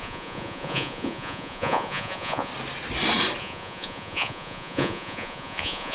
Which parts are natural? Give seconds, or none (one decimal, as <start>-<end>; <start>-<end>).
2.5-3.4